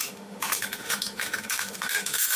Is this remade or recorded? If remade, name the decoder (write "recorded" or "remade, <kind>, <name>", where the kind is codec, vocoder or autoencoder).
remade, autoencoder, DAC-VAE